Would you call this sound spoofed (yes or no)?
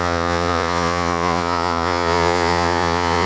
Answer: yes